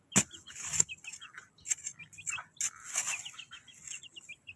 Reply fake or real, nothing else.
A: real